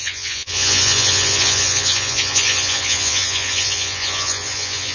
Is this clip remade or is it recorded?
remade